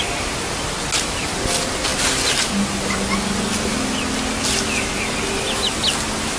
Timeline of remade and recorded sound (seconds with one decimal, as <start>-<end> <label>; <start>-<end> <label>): 0.0-6.4 recorded